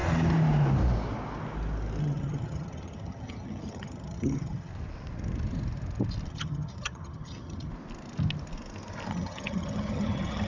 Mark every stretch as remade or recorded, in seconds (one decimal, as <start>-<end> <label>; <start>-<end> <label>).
0.0-2.0 recorded; 2.0-4.7 remade; 4.7-6.3 recorded; 6.3-7.7 remade; 7.7-9.1 recorded; 9.1-10.5 remade